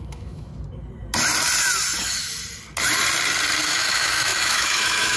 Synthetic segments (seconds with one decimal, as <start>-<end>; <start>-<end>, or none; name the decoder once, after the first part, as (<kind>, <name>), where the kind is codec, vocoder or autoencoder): 0.0-0.5 (autoencoder, DAC-VAE); 3.6-5.2